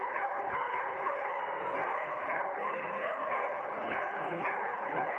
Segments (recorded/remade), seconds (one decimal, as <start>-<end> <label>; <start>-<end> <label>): 0.0-1.4 remade; 1.4-1.9 recorded; 1.9-5.2 remade